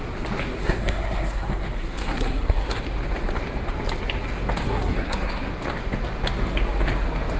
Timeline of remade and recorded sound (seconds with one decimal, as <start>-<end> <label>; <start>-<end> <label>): 0.0-0.6 recorded; 0.6-2.8 remade; 2.8-4.6 recorded; 4.6-5.5 remade; 5.5-7.4 recorded